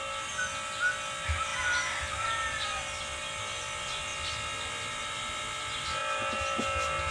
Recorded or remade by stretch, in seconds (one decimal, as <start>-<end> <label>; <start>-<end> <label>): 0.0-1.5 recorded; 1.5-2.1 remade; 2.1-7.1 recorded